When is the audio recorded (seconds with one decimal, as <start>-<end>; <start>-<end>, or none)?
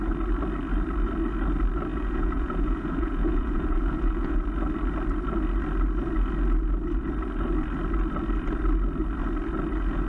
0.0-1.9; 4.4-10.1